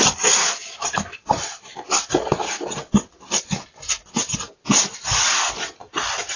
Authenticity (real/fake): real